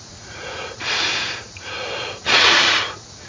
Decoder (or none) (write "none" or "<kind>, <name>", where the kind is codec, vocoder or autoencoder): vocoder, Vocos